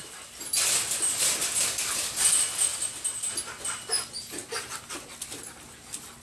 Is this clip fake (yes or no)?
no